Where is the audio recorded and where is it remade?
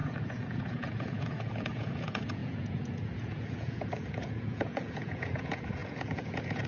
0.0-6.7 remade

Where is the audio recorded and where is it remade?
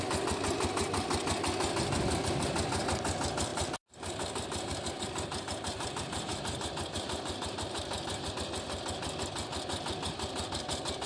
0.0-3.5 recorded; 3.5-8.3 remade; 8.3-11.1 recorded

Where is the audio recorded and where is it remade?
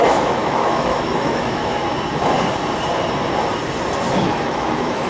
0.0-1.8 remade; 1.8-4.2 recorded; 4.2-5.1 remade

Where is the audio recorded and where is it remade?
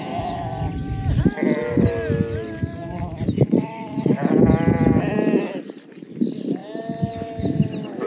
0.0-8.1 recorded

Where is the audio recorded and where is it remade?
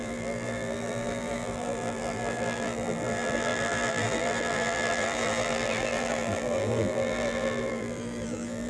0.0-8.7 remade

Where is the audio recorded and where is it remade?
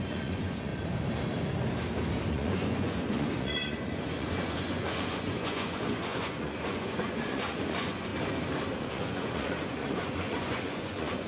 0.0-0.7 remade; 0.7-2.3 recorded; 2.3-8.1 remade; 8.1-8.8 recorded; 8.8-11.3 remade